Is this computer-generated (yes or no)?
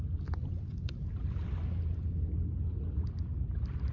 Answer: no